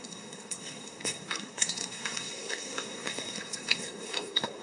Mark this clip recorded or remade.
remade